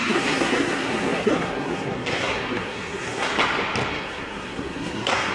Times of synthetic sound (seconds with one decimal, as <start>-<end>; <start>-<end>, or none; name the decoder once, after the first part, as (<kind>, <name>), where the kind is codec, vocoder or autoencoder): 0.0-3.3 (codec, SNAC); 3.9-5.3